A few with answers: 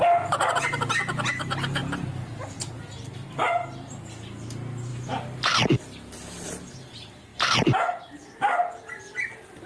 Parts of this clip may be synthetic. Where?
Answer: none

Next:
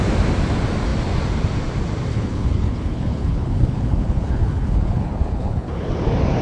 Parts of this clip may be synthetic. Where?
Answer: 2.1-5.9 (codec, HILCodec)

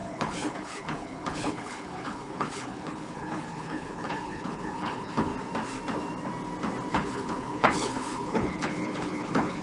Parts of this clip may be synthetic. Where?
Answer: 0.0-5.3 (codec, HILCodec); 6.9-9.6

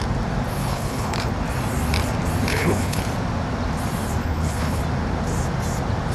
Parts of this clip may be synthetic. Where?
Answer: 0.6-1.3 (codec, HILCodec); 2.5-3.0; 4.2-4.8

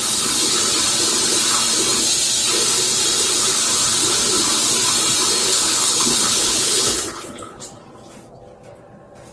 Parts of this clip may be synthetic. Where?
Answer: 5.4-7.6 (codec, HILCodec)

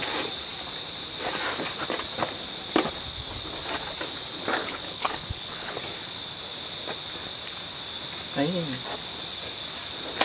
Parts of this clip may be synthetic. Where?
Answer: 4.6-5.8 (codec, HILCodec)

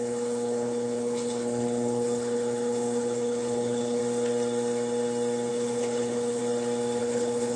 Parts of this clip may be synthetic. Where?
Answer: 0.0-4.0 (codec, HILCodec); 5.5-6.4; 7.0-7.6